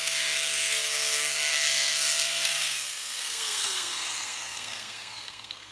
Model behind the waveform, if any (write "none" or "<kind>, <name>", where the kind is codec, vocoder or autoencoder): codec, SNAC